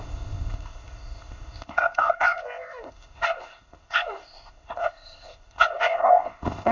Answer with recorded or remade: remade